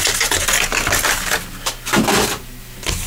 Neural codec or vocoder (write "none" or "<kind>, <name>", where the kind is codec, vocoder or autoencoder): none